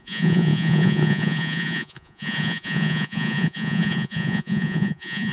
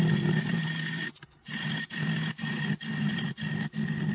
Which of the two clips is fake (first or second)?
first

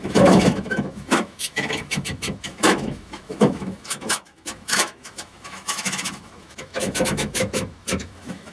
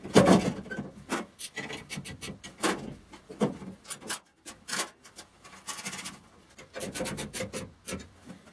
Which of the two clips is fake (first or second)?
first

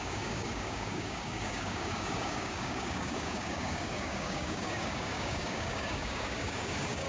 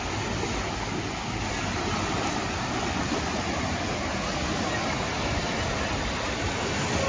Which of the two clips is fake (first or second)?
first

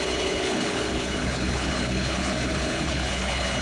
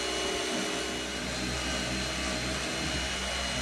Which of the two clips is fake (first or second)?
first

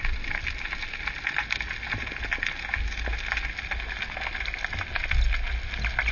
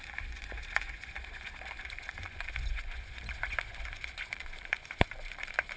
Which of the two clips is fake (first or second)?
second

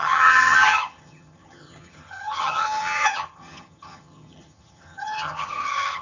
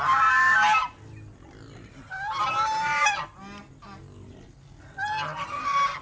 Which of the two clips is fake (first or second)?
first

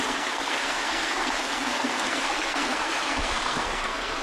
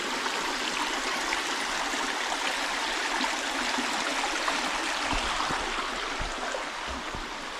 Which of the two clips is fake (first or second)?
first